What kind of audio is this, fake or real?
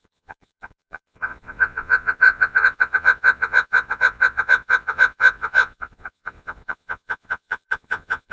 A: fake